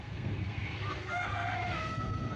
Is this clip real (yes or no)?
no